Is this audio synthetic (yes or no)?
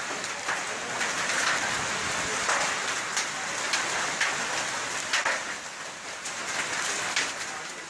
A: no